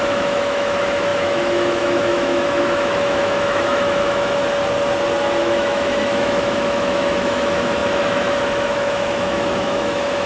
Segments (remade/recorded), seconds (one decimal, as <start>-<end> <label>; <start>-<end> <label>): 0.0-4.4 remade; 4.4-5.4 recorded; 5.4-10.3 remade